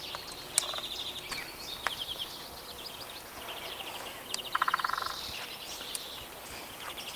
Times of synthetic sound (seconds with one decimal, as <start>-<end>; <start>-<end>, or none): none